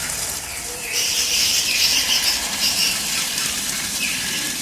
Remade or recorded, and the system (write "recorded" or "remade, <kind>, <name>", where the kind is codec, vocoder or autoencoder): remade, vocoder, BigVGAN v2